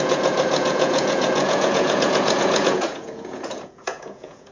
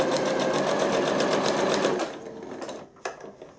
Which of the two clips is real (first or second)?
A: second